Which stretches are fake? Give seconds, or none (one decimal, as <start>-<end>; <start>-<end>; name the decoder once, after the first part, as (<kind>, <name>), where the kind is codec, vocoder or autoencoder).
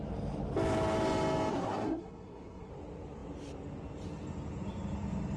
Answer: 1.5-2.7 (codec, SNAC)